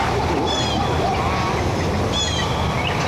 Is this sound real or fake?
real